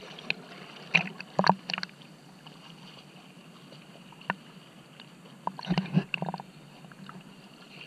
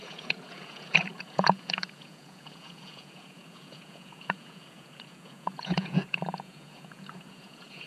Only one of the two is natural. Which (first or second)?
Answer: first